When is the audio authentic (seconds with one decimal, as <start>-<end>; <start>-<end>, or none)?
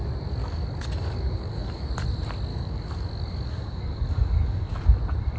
0.0-0.4; 1.9-2.5; 4.7-5.4